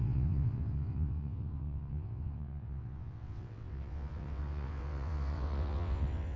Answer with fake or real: fake